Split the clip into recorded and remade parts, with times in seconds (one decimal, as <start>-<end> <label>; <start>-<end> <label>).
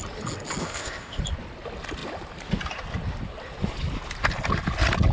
0.0-0.6 recorded; 0.6-1.2 remade; 1.2-5.1 recorded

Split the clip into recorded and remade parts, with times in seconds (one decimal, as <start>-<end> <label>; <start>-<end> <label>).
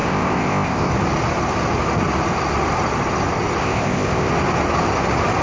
0.0-0.9 remade; 0.9-3.6 recorded; 3.6-4.3 remade; 4.3-5.4 recorded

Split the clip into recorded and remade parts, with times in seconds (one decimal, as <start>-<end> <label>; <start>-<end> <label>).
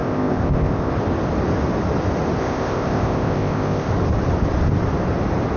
0.0-0.9 remade; 0.9-2.4 recorded; 2.4-3.9 remade; 3.9-5.6 recorded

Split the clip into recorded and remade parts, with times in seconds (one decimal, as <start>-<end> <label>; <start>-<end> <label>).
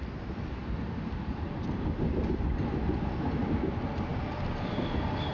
0.0-5.3 recorded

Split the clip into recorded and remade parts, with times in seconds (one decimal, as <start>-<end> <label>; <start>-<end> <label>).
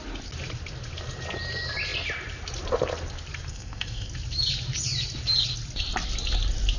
0.0-3.5 recorded; 3.5-4.1 remade; 4.1-6.8 recorded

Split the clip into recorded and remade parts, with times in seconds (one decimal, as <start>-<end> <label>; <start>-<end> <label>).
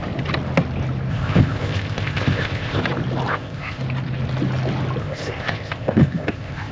0.0-1.1 recorded; 1.1-2.8 remade; 2.8-3.3 recorded; 3.3-3.8 remade; 3.8-5.0 recorded; 5.0-6.7 remade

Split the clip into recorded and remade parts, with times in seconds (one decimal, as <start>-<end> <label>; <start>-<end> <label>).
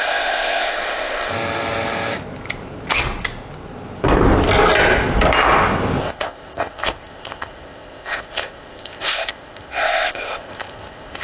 0.0-1.3 remade; 1.3-6.0 recorded; 6.0-11.2 remade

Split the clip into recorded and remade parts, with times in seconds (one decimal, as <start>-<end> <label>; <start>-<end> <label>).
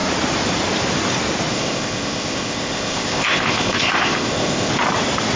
0.0-1.5 recorded; 1.5-4.7 remade; 4.7-5.4 recorded